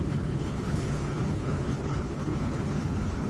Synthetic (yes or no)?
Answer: yes